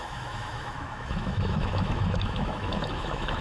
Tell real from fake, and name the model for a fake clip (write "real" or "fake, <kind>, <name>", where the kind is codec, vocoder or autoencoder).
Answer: fake, autoencoder, DAC-VAE